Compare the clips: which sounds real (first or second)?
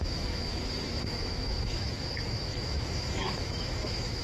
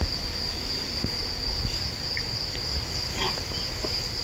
second